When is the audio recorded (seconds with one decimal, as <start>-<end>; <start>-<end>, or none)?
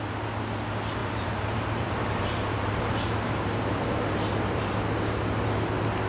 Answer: 0.0-1.0; 4.7-6.1